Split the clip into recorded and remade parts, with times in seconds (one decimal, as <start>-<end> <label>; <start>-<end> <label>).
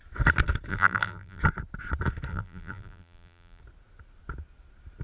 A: 0.0-0.7 recorded; 0.7-1.4 remade; 1.4-2.3 recorded; 2.3-3.6 remade; 3.6-5.0 recorded